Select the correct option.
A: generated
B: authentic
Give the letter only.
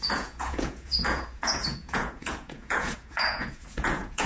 A